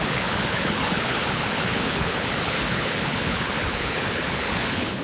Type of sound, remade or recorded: remade